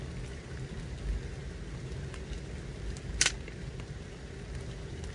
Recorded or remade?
recorded